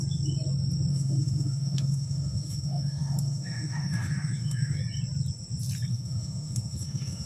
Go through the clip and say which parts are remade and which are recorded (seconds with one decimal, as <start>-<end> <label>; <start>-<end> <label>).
0.0-0.9 recorded; 0.9-4.8 remade; 4.8-5.9 recorded; 5.9-7.3 remade